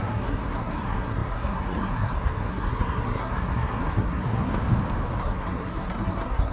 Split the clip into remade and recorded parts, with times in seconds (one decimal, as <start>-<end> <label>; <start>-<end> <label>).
0.0-4.5 remade; 4.5-5.2 recorded; 5.2-6.5 remade